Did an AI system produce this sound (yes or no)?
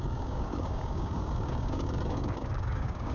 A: yes